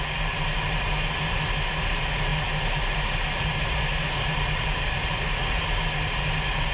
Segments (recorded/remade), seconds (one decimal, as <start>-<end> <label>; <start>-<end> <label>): 0.0-6.7 recorded